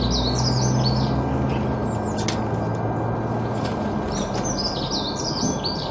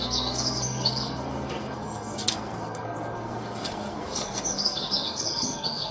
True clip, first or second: first